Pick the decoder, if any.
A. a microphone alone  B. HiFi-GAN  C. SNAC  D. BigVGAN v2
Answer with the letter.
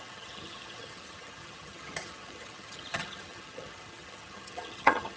B